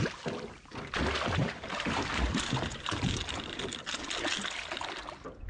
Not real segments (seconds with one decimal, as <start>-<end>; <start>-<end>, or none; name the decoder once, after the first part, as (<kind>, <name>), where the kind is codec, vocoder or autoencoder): 1.4-3.8 (vocoder, BigVGAN v2)